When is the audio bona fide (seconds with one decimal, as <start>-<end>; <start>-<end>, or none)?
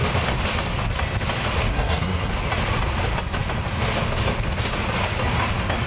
0.0-1.7; 2.3-5.9